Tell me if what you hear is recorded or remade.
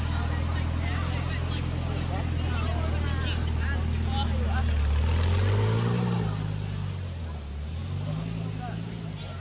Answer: recorded